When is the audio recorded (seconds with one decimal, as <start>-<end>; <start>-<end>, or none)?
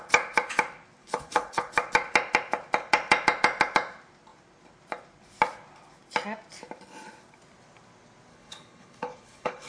0.0-1.0; 1.7-8.3